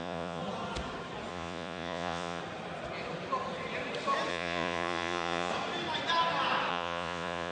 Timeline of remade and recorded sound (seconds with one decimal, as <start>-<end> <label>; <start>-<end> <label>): 0.0-0.4 remade; 0.4-1.3 recorded; 1.3-2.4 remade; 2.4-4.3 recorded; 4.3-5.5 remade; 5.5-6.7 recorded; 6.7-7.5 remade